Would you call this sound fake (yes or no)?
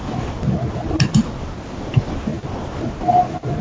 no